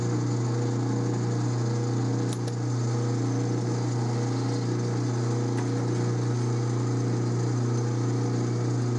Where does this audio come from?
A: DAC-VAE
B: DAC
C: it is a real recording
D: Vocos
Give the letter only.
C